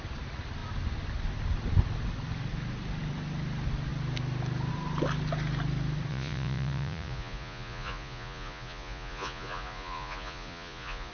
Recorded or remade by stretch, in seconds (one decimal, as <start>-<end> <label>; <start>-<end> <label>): 0.0-6.1 recorded; 6.1-11.1 remade